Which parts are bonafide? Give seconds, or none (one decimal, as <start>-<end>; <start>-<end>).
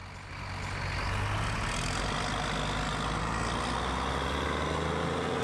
0.0-5.4